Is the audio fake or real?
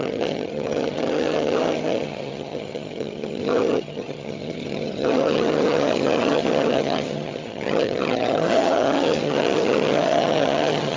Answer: fake